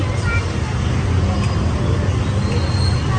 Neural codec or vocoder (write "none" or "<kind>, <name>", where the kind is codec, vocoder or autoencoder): none